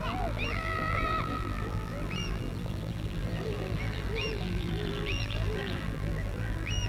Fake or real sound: fake